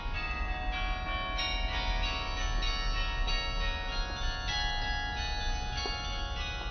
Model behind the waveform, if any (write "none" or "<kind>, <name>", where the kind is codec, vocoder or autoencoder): none